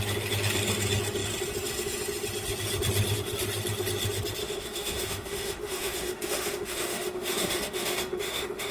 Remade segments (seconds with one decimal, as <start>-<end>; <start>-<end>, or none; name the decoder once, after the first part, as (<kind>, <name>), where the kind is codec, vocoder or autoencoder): 4.4-8.7 (autoencoder, DAC-VAE)